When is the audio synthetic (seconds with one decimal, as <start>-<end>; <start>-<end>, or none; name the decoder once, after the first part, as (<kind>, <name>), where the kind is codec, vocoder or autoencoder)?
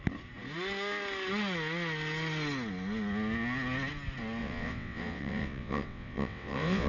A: 4.4-6.9 (vocoder, WaveNeXt)